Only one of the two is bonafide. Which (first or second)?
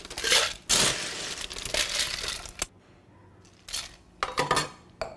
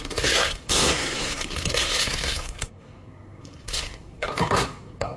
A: first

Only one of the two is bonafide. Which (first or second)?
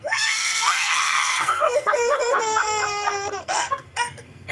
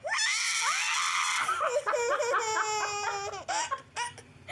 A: second